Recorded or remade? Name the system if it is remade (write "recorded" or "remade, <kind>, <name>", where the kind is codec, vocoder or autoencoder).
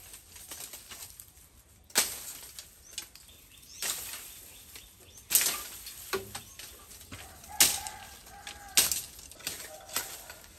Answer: recorded